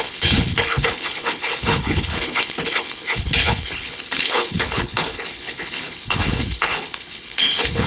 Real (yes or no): no